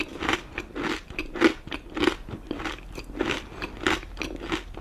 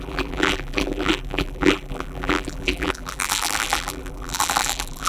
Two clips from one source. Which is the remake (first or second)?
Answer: second